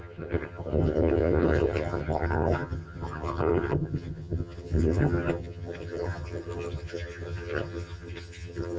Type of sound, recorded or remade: remade